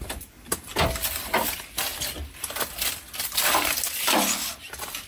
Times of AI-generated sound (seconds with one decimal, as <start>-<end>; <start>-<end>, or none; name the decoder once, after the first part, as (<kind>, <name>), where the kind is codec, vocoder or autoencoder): none